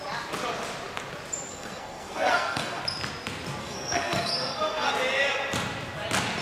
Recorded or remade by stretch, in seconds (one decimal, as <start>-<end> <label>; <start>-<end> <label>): 0.0-1.5 recorded; 1.5-2.8 remade; 2.8-3.6 recorded; 3.6-4.9 remade; 4.9-6.4 recorded